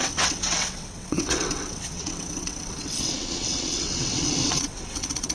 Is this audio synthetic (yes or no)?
yes